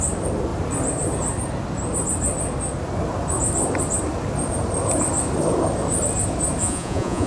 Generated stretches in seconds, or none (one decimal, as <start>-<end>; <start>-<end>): 6.6-7.3